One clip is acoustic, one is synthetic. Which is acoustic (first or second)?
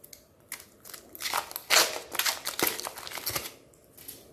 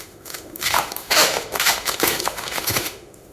first